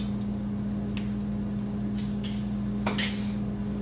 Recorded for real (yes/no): yes